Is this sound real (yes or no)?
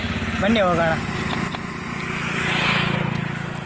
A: yes